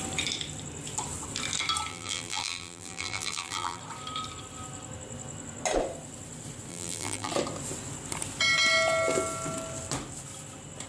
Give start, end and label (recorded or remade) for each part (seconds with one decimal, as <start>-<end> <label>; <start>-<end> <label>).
0.0-1.9 recorded; 1.9-3.8 remade; 3.8-6.7 recorded; 6.7-7.3 remade; 7.3-10.9 recorded